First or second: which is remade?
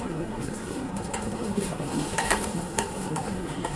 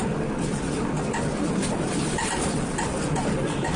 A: first